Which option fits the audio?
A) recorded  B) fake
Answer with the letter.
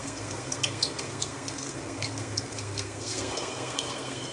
B